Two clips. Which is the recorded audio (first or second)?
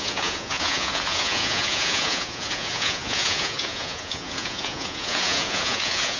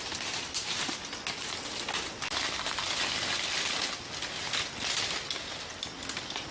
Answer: second